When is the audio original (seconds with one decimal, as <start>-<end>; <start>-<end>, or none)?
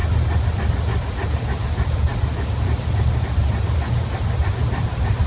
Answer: 0.0-5.3